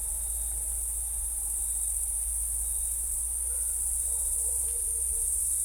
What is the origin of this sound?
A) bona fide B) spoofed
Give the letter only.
A